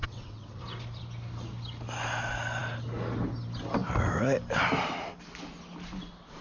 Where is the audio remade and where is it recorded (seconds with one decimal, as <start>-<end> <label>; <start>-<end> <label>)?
0.0-0.6 remade; 0.6-6.4 recorded